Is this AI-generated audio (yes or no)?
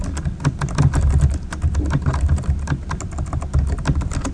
no